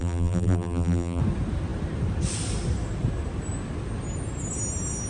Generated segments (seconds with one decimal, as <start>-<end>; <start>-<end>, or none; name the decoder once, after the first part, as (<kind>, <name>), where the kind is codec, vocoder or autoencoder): 0.0-1.2 (vocoder, BigVGAN v2)